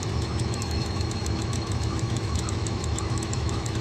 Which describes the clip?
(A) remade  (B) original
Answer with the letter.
A